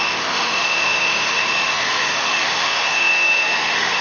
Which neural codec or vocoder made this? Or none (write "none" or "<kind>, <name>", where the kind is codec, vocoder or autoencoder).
autoencoder, DAC-VAE